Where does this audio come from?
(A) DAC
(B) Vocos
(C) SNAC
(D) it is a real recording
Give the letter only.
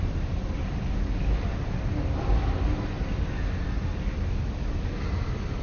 D